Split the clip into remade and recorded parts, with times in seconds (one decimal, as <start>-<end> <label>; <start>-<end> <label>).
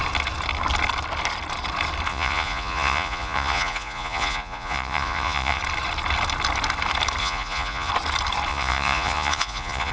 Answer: 0.0-2.1 recorded; 2.1-5.6 remade; 5.6-7.2 recorded; 7.2-7.9 remade; 7.9-8.5 recorded; 8.5-9.9 remade